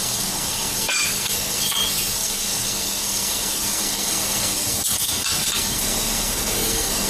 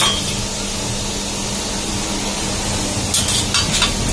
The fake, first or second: first